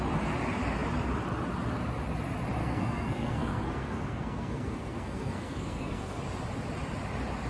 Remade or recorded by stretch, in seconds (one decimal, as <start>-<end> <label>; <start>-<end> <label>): 0.0-2.6 recorded; 2.6-6.2 remade; 6.2-7.5 recorded